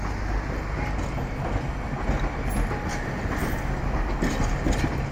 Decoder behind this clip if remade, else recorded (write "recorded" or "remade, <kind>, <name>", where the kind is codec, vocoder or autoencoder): recorded